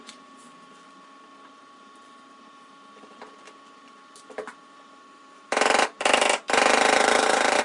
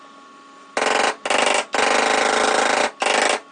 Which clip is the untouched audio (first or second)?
second